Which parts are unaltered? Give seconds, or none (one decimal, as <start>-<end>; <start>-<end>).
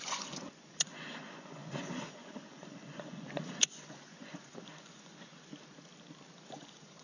5.5-6.5